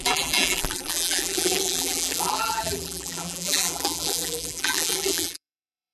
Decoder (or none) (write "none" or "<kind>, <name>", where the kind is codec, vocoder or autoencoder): vocoder, BigVGAN v2